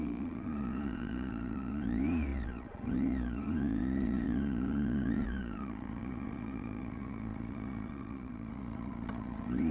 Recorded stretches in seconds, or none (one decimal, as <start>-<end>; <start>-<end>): none